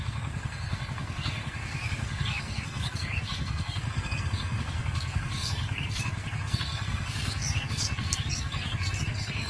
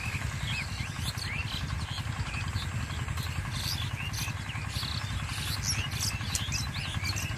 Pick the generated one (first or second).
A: first